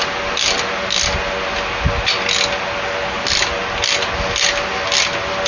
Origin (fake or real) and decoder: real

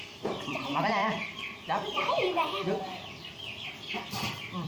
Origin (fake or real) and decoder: fake, vocoder, BigVGAN v2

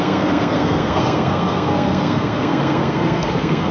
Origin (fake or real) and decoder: fake, codec, SNAC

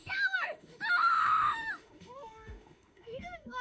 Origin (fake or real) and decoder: fake, autoencoder, DAC-VAE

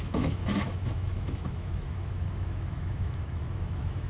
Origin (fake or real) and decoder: fake, autoencoder, DAC-VAE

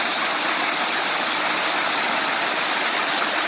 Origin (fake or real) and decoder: real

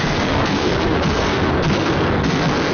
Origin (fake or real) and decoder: fake, codec, SNAC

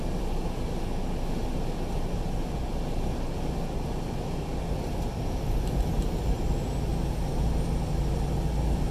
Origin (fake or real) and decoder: real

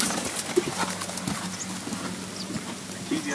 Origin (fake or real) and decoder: real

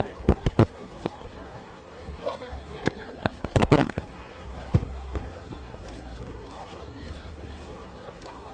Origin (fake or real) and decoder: fake, codec, SNAC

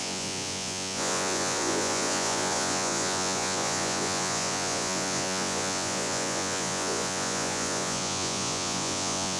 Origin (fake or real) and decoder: fake, vocoder, Vocos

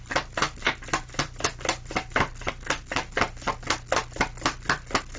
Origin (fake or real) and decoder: real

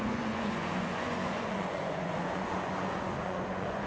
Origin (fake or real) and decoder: fake, vocoder, Vocos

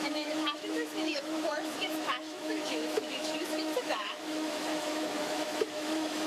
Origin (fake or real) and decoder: fake, autoencoder, DAC-VAE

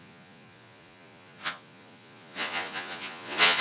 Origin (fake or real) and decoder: fake, vocoder, Vocos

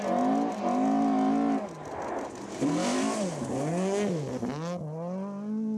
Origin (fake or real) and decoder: real